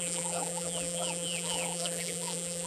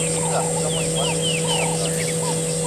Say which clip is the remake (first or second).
first